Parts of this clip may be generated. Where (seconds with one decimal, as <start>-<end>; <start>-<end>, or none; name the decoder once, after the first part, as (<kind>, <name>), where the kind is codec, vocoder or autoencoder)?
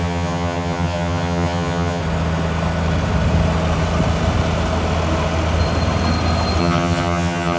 0.0-2.0 (vocoder, HiFi-GAN); 6.6-7.6